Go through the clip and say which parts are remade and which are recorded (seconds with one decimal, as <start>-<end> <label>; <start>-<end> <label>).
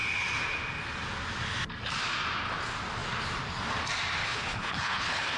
0.0-4.2 recorded; 4.2-5.4 remade